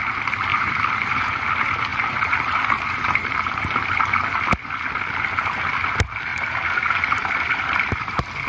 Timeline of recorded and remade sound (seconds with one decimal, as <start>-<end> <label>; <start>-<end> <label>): 0.0-0.5 recorded; 0.5-1.5 remade; 1.5-1.9 recorded; 1.9-3.8 remade; 3.8-6.3 recorded; 6.3-7.2 remade; 7.2-8.5 recorded